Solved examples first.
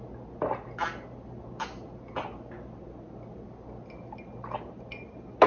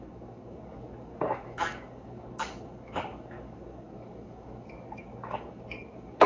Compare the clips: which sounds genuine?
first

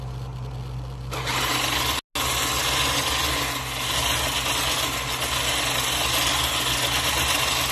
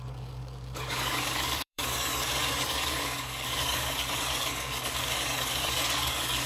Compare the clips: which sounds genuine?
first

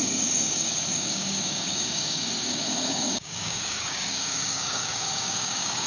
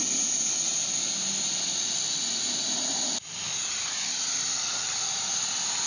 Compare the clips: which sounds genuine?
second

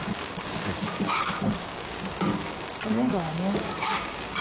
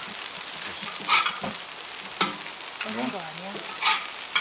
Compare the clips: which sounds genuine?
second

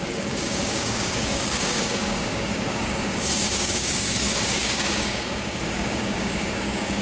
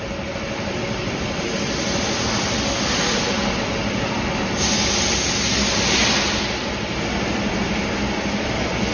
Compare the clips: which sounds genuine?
second